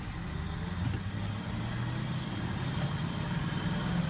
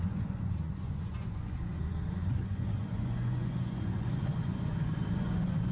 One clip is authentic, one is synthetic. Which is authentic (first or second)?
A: first